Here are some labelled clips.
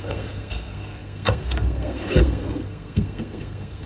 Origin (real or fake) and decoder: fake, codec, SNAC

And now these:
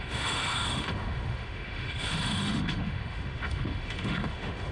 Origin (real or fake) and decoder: fake, autoencoder, DAC-VAE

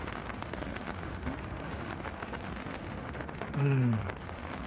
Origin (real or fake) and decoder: fake, autoencoder, DAC-VAE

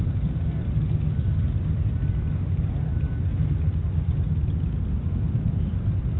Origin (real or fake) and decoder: real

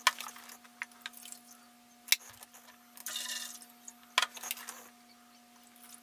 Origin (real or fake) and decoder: real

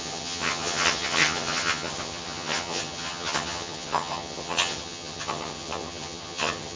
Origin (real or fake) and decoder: fake, vocoder, HiFi-GAN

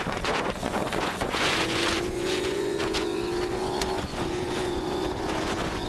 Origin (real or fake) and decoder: fake, vocoder, Vocos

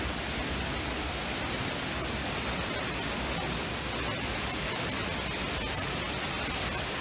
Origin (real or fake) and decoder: real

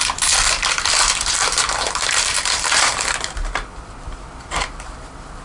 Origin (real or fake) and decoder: fake, vocoder, BigVGAN v2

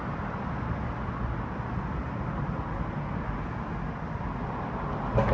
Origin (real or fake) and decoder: real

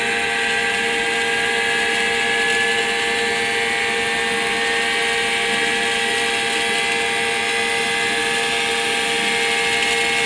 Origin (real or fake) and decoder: real